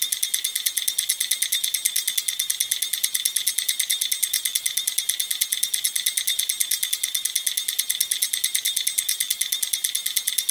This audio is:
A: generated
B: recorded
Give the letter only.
B